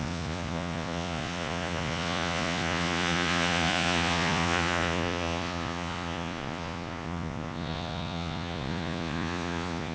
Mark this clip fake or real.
fake